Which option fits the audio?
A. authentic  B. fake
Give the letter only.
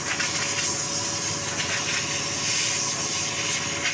A